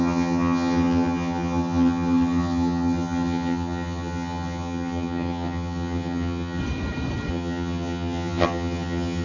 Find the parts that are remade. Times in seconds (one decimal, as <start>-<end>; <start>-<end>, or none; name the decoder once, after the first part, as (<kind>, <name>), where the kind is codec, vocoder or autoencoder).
0.0-6.6 (vocoder, HiFi-GAN); 7.3-9.2

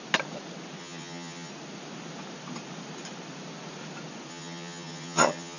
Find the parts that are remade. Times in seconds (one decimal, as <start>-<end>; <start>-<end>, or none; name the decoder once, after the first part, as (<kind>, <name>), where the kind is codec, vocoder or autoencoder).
0.8-1.5 (vocoder, HiFi-GAN); 4.3-5.6

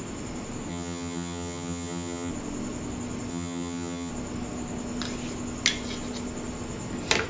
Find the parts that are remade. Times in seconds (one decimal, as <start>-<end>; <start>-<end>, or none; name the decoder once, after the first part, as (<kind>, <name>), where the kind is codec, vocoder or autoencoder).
0.7-2.3 (vocoder, HiFi-GAN); 3.3-4.1

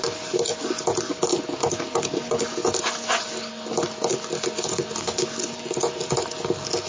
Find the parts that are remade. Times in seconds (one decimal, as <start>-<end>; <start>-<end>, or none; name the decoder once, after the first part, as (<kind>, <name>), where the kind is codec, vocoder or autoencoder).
none

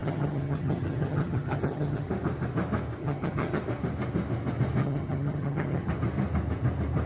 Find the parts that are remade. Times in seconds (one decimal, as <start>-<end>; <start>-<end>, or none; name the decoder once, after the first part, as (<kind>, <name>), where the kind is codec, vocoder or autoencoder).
0.0-2.1 (vocoder, HiFi-GAN); 3.0-3.6; 4.8-5.9